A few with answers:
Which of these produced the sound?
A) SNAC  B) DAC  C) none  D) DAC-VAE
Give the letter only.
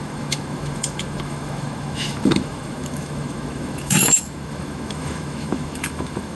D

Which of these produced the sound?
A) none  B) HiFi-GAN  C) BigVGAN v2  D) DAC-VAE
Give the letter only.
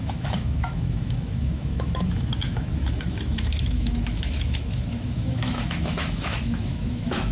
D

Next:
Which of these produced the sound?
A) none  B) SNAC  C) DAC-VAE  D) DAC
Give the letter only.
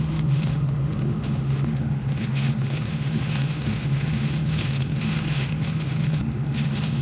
C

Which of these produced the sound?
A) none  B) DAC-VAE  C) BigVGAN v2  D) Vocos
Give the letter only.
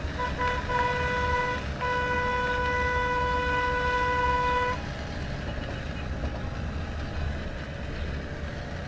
A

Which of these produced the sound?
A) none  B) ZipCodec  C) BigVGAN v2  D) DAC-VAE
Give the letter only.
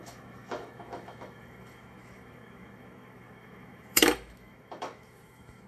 D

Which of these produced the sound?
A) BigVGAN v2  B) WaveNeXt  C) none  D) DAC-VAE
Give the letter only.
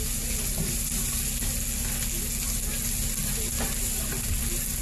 C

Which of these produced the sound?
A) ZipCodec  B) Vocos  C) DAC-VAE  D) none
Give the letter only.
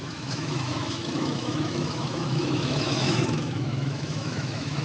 C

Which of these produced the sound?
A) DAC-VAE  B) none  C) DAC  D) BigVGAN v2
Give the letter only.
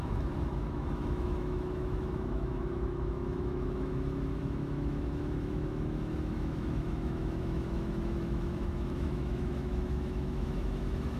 A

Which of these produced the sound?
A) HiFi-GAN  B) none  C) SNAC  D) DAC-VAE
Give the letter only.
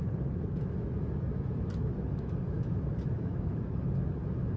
D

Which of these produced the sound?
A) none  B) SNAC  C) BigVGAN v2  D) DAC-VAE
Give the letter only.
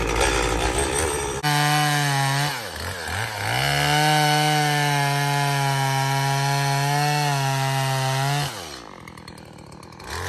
A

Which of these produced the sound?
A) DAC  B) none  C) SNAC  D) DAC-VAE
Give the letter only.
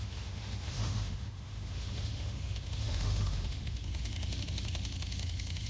D